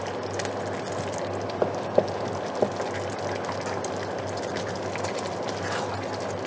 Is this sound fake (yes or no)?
no